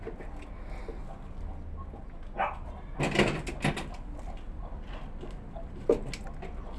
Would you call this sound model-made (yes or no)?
no